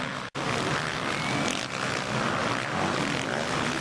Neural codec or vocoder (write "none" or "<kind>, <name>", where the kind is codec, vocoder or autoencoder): none